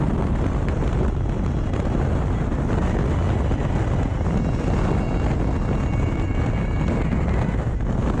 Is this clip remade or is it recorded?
recorded